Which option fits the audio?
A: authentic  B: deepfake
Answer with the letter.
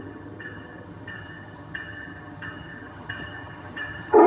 B